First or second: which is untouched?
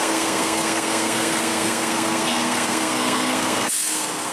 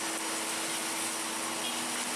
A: second